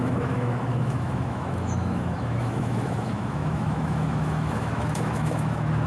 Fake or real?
fake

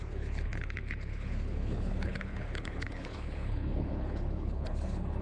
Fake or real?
fake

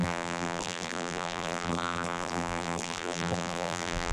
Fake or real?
fake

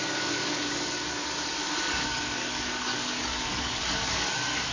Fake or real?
fake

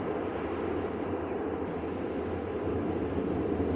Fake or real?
real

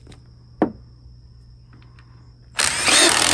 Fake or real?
real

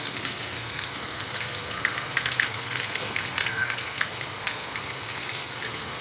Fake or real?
fake